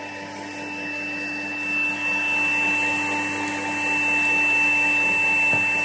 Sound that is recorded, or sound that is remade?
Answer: recorded